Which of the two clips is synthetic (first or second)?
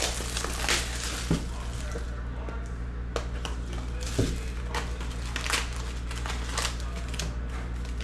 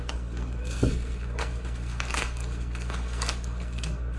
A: second